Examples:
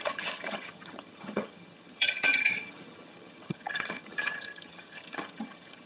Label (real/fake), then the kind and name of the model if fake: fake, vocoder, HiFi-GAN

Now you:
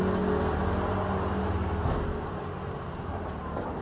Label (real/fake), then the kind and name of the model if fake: real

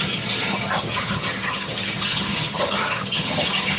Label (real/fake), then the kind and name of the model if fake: fake, vocoder, HiFi-GAN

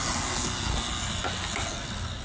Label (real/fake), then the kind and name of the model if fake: real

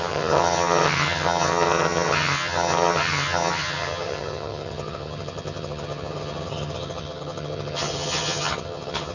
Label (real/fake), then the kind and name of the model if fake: fake, vocoder, HiFi-GAN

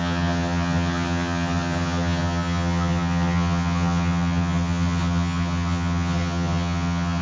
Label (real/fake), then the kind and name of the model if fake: fake, vocoder, HiFi-GAN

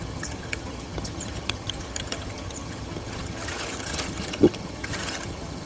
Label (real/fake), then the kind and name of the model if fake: fake, vocoder, HiFi-GAN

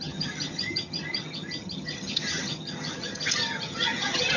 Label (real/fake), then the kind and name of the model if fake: fake, vocoder, HiFi-GAN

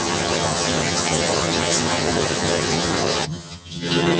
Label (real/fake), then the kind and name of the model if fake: fake, vocoder, HiFi-GAN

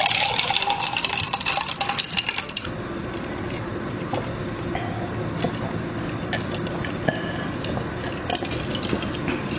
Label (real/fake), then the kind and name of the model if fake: real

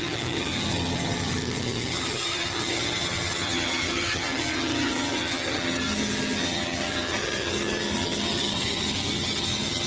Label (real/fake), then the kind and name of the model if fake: fake, vocoder, HiFi-GAN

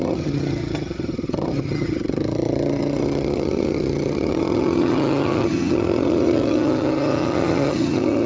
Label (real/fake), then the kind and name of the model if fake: fake, vocoder, HiFi-GAN